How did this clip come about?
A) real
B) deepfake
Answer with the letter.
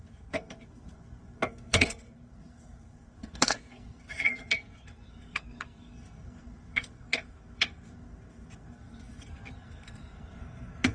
B